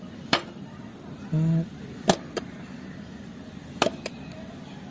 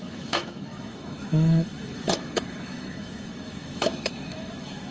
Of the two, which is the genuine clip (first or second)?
first